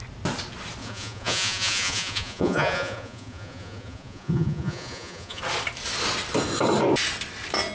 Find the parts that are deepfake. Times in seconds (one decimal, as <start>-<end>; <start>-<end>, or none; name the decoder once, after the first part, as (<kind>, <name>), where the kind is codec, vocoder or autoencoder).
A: 0.8-5.4 (vocoder, Vocos)